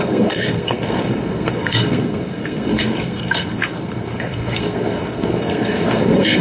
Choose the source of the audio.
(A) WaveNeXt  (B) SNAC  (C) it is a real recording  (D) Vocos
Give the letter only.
B